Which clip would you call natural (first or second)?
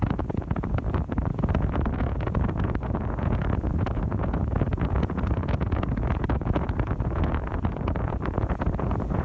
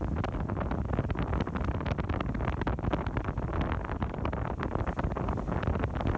second